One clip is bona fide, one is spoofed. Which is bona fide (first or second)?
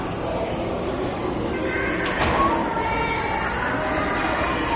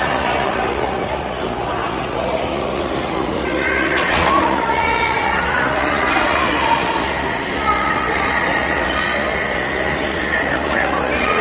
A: first